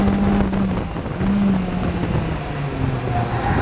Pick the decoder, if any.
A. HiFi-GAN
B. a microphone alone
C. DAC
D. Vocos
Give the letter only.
B